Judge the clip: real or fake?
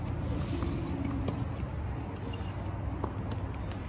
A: real